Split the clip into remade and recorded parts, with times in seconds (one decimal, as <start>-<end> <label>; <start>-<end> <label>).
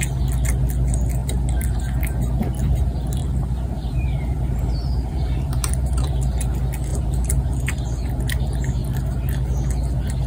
0.0-1.2 recorded; 1.2-1.8 remade; 1.8-3.2 recorded; 3.2-6.1 remade; 6.1-6.9 recorded; 6.9-8.2 remade; 8.2-10.3 recorded